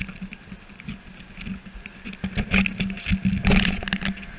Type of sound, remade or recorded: recorded